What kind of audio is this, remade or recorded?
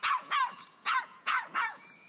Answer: remade